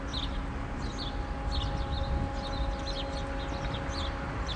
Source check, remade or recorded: recorded